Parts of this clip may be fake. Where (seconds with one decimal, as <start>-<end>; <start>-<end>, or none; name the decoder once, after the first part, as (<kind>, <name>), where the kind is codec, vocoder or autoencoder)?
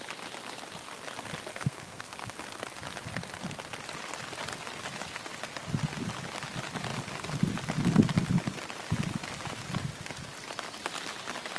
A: 1.5-2.3 (codec, SNAC)